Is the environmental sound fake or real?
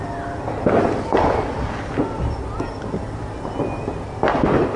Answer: real